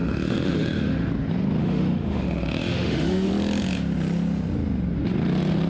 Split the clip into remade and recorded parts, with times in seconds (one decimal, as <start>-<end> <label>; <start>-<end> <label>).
0.0-1.1 remade; 1.1-1.6 recorded; 1.6-3.3 remade; 3.3-5.7 recorded